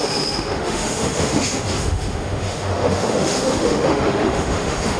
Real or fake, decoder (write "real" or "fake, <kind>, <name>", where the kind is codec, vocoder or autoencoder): fake, autoencoder, DAC-VAE